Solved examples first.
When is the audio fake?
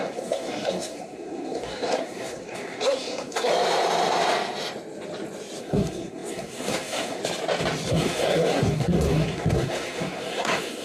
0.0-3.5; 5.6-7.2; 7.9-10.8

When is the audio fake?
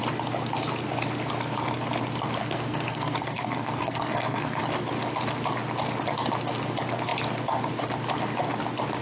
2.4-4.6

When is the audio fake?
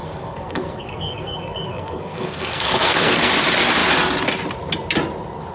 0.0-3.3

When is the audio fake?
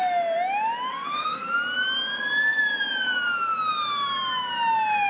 0.9-1.5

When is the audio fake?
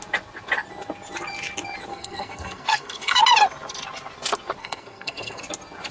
1.9-3.2; 4.6-5.4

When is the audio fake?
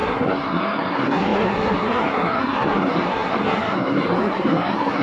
0.0-5.0